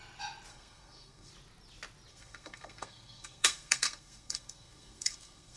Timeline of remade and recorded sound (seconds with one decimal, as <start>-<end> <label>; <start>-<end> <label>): 0.0-0.5 recorded; 0.5-1.3 remade; 1.3-2.1 recorded; 2.1-5.6 remade